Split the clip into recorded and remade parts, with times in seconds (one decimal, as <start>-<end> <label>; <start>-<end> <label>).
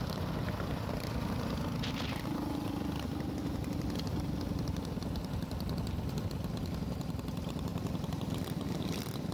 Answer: 0.0-9.3 recorded